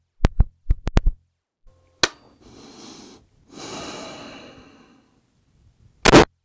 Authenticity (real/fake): real